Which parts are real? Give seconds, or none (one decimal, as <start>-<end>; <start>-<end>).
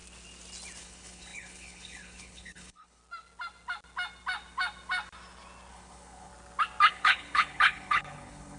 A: 0.0-0.8; 3.0-5.7; 6.3-6.9